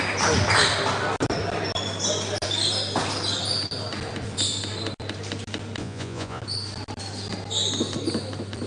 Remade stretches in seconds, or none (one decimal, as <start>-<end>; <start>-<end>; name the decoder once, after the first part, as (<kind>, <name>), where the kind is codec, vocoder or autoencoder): 5.8-6.4 (vocoder, Vocos)